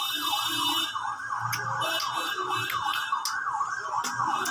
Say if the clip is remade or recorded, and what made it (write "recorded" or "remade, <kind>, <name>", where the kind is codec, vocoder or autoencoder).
recorded